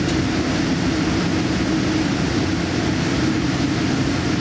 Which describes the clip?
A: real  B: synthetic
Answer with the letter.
A